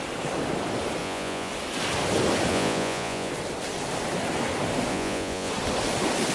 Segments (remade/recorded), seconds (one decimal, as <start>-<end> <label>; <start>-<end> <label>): 0.0-1.0 recorded; 1.0-1.5 remade; 1.5-2.5 recorded; 2.5-3.3 remade; 3.3-4.9 recorded; 4.9-5.5 remade; 5.5-6.3 recorded